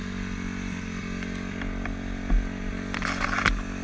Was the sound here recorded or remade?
recorded